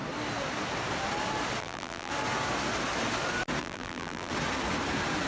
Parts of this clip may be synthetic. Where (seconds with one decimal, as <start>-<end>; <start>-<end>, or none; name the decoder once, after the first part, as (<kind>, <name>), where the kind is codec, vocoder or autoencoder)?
1.6-2.1 (vocoder, BigVGAN v2); 3.6-4.3

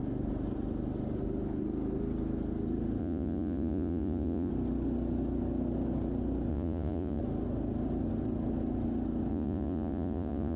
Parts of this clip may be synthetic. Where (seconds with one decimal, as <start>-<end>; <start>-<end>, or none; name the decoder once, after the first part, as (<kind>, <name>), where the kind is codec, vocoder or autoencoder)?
3.0-4.5 (vocoder, Vocos); 6.5-7.2; 9.3-10.6

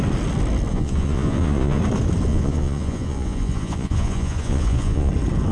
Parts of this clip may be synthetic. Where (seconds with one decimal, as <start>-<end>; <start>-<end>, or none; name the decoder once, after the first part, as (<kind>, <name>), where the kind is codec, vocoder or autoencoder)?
0.7-1.8 (vocoder, Vocos); 2.3-5.1